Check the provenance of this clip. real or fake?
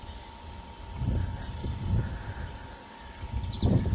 fake